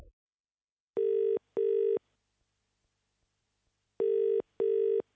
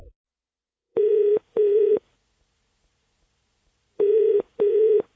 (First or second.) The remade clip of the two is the second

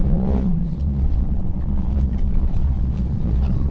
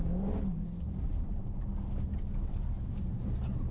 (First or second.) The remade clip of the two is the first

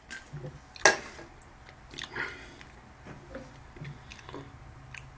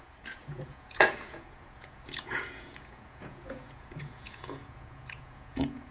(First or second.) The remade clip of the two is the second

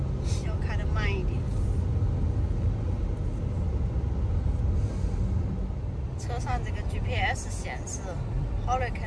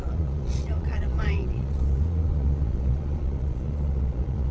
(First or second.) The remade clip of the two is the second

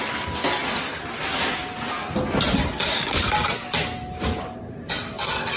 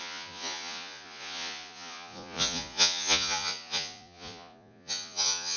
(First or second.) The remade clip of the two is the second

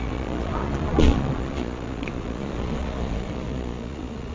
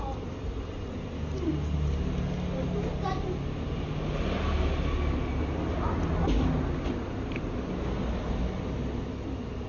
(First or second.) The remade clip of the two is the first